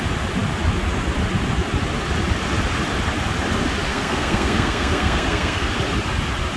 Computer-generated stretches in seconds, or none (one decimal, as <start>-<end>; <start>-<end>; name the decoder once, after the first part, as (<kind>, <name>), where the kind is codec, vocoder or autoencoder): 3.9-5.7 (codec, SNAC)